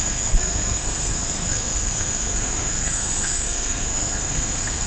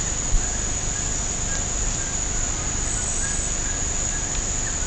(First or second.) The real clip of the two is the second